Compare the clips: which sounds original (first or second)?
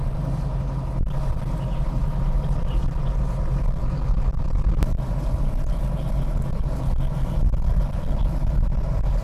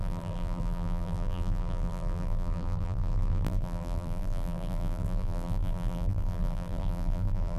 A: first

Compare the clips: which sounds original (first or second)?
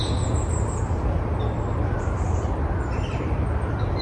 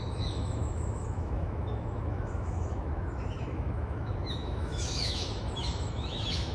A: first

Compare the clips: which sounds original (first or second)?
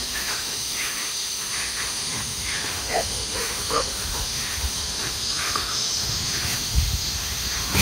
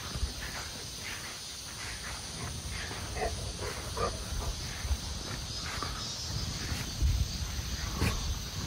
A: second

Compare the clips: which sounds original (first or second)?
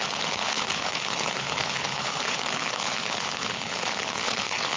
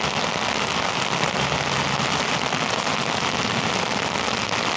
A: second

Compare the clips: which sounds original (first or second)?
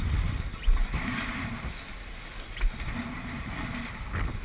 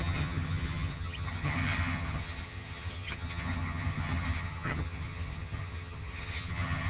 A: first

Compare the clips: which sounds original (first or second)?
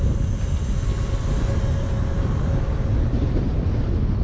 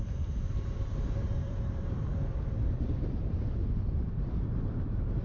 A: first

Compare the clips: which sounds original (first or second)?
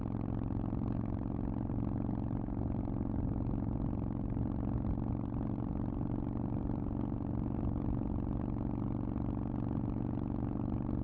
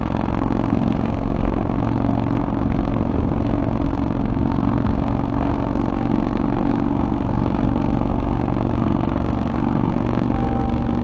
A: first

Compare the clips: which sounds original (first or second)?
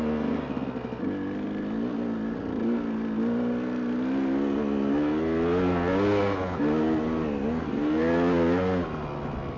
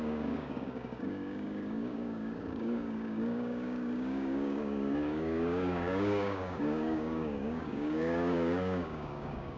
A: first